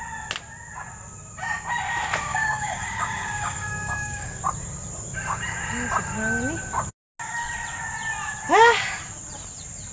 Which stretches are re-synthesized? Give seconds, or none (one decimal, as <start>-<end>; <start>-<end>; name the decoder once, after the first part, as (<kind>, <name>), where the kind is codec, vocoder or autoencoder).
2.3-4.4 (codec, DAC)

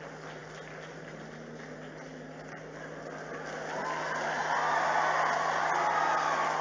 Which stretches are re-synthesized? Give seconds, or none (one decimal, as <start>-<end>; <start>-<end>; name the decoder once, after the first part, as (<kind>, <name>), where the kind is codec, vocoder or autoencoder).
none

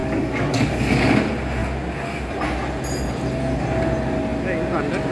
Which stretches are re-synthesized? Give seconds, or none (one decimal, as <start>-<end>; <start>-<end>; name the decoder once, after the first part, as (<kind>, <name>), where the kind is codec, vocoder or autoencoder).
0.0-1.0 (codec, DAC)

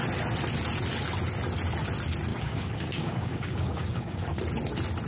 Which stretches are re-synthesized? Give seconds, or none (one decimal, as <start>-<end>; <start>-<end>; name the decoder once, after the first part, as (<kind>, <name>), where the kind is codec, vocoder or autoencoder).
2.3-4.4 (codec, DAC)